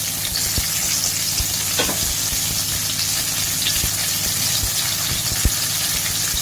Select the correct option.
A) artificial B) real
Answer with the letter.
B